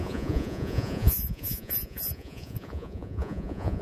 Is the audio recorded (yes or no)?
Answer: no